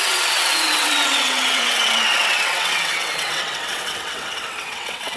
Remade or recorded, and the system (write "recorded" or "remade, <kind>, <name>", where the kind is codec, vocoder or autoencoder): remade, vocoder, WaveNeXt